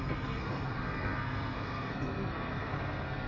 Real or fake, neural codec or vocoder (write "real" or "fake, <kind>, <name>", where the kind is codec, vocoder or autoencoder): fake, codec, SNAC